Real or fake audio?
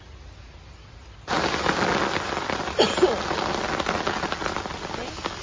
real